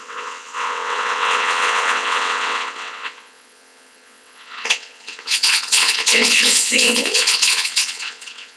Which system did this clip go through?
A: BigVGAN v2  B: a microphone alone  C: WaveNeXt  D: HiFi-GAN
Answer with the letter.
C